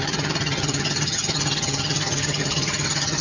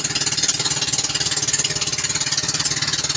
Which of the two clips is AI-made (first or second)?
first